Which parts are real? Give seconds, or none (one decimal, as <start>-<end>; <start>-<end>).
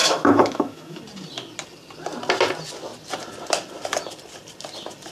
1.0-5.1